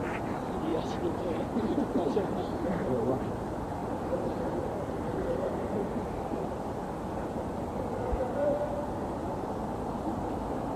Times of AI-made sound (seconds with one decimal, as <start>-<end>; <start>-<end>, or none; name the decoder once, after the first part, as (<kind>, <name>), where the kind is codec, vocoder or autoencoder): 0.7-3.3 (vocoder, BigVGAN v2); 3.8-6.5; 9.2-10.4